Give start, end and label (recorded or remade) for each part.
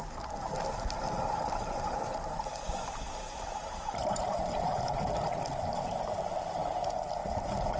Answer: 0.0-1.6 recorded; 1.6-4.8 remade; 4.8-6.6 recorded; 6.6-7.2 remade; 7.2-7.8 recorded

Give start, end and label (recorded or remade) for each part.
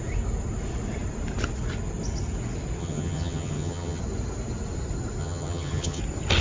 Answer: 0.0-2.8 recorded; 2.8-4.0 remade; 4.0-5.2 recorded; 5.2-6.0 remade; 6.0-6.4 recorded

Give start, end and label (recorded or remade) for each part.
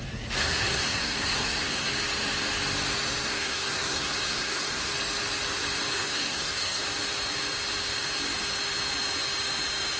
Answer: 0.0-0.4 recorded; 0.4-1.9 remade; 1.9-3.3 recorded; 3.3-4.9 remade; 4.9-5.9 recorded; 5.9-6.8 remade; 6.8-10.0 recorded